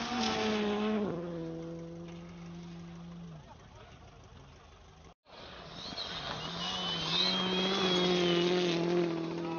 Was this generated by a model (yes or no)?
no